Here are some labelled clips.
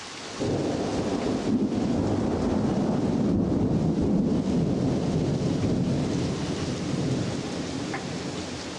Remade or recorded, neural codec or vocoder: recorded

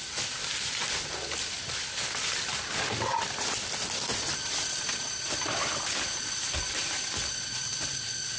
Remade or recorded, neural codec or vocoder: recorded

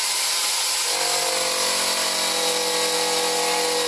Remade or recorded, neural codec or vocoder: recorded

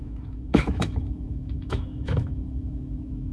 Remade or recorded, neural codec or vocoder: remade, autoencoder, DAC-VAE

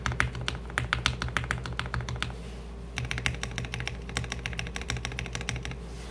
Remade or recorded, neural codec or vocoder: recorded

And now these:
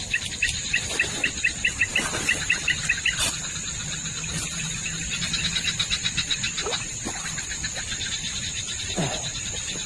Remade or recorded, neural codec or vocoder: recorded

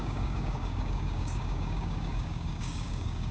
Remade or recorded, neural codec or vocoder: remade, codec, DAC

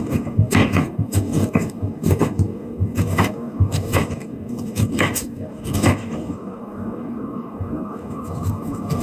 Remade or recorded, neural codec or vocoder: remade, codec, DAC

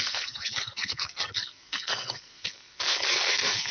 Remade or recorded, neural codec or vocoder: remade, codec, SNAC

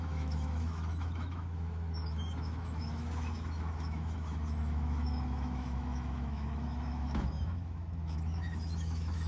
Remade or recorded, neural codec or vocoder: remade, autoencoder, DAC-VAE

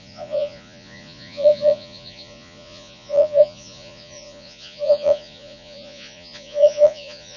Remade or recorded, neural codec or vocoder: remade, vocoder, Vocos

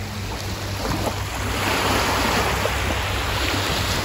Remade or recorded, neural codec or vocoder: recorded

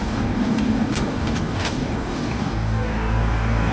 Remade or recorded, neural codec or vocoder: remade, codec, DAC